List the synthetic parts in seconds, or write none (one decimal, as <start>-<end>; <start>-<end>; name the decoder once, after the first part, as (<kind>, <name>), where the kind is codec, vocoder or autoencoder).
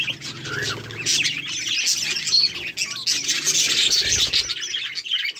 none